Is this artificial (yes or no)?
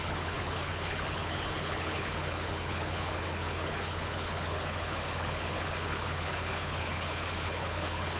yes